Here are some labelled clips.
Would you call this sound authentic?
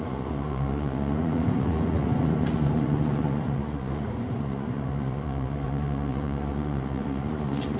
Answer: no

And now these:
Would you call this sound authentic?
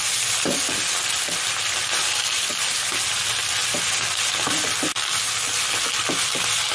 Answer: yes